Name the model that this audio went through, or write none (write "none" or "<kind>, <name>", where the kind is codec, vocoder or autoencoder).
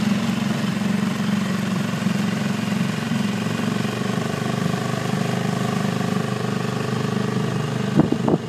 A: none